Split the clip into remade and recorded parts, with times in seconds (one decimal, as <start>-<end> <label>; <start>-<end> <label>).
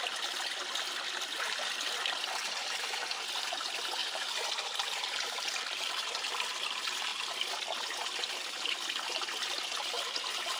0.0-4.0 recorded; 4.0-5.9 remade; 5.9-10.6 recorded